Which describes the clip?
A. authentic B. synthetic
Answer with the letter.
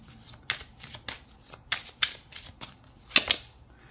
A